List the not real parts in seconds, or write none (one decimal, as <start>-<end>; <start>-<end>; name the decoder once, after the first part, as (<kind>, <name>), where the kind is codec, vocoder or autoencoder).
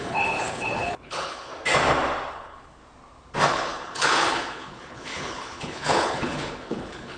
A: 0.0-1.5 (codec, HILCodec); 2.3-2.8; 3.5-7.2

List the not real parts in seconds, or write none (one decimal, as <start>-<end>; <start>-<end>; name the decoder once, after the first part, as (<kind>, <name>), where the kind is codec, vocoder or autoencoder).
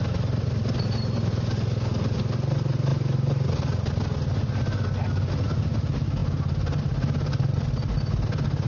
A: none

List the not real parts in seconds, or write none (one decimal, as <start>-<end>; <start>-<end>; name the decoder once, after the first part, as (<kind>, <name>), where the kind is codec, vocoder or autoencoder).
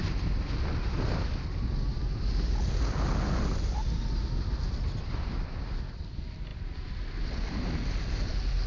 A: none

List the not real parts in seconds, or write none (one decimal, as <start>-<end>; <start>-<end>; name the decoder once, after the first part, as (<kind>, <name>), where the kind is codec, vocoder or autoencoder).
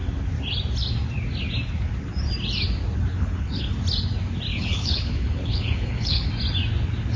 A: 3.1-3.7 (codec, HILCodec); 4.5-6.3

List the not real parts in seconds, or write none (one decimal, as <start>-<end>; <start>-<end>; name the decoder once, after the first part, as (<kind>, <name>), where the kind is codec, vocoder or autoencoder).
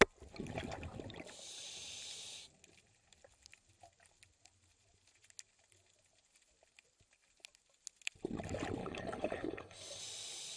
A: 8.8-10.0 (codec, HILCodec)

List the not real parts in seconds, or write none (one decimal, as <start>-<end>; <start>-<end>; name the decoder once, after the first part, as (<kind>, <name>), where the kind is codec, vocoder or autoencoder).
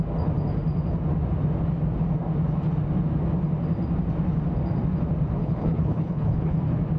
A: 5.4-6.6 (codec, HILCodec)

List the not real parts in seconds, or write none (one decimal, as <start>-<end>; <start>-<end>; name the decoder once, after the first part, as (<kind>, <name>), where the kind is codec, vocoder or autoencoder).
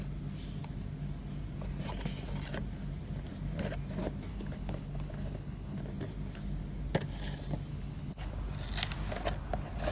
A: 4.3-5.8 (codec, HILCodec); 7.7-8.3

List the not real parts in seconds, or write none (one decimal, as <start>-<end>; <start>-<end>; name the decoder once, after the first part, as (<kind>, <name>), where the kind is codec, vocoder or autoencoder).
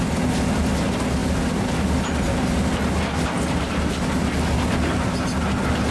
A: none